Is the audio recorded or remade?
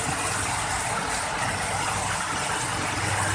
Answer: recorded